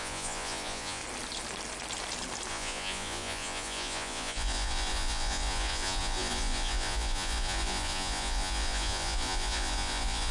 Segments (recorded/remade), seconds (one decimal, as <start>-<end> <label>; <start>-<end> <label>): 0.0-1.0 remade; 1.0-2.5 recorded; 2.5-10.3 remade